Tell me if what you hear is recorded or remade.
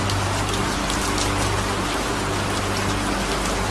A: recorded